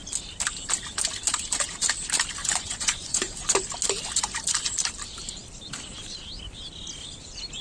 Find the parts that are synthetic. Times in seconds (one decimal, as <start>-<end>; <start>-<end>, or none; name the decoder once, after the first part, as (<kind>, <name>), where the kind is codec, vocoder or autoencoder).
2.4-3.6 (vocoder, Vocos)